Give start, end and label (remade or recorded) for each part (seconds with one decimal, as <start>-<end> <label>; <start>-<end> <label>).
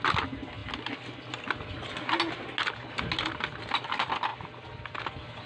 0.0-5.5 recorded